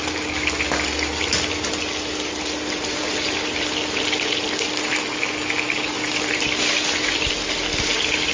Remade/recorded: recorded